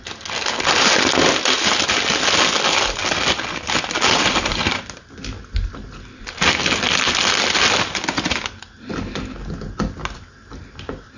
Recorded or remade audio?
recorded